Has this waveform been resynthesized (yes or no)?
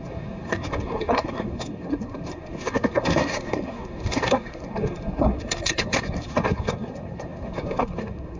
yes